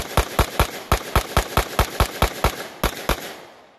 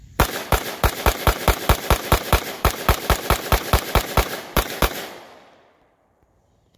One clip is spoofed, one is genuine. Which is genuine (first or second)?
first